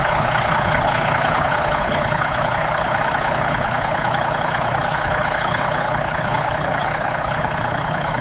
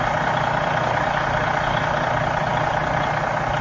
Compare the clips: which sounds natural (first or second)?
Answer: second